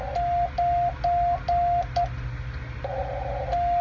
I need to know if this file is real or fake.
real